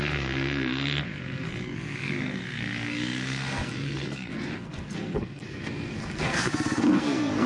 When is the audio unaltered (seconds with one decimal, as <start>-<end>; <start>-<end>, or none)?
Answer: none